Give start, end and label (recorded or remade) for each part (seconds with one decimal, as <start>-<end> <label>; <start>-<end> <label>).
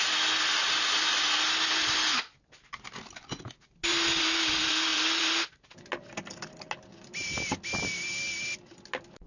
0.0-9.3 recorded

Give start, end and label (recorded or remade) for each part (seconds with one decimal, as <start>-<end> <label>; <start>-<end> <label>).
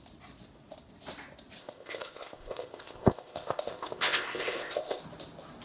0.0-1.6 recorded; 1.6-5.0 remade; 5.0-5.6 recorded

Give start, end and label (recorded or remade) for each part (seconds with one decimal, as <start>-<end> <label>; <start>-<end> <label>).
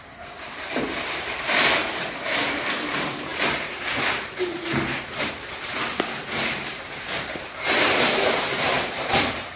0.0-9.6 remade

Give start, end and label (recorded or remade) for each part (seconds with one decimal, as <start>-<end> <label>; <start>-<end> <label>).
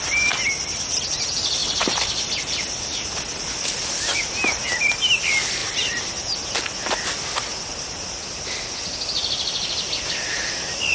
0.0-10.9 recorded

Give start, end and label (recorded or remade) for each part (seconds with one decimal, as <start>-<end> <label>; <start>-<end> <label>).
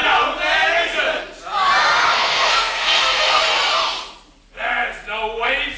0.0-2.1 recorded; 2.1-3.4 remade; 3.4-5.8 recorded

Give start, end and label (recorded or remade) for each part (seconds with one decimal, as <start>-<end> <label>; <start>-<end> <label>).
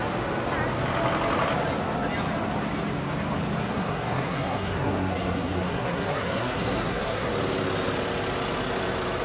0.0-3.6 recorded; 3.6-7.3 remade; 7.3-9.2 recorded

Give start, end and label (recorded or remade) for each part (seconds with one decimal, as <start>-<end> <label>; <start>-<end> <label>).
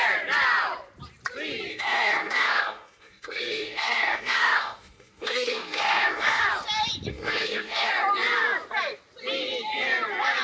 0.0-1.7 recorded; 1.7-6.4 remade; 6.4-7.1 recorded; 7.1-7.9 remade; 7.9-10.4 recorded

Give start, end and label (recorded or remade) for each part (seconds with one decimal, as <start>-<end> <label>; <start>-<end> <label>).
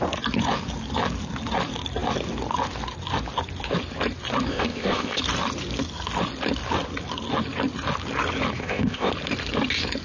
0.0-4.5 recorded; 4.5-5.2 remade; 5.2-8.6 recorded; 8.6-9.1 remade; 9.1-10.0 recorded